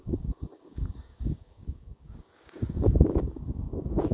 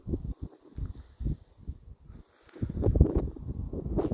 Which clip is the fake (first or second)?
first